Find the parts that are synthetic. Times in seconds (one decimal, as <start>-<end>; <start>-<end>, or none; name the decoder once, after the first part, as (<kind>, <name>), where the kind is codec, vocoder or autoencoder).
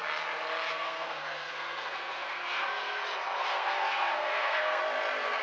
0.7-3.0 (codec, SNAC); 3.4-4.8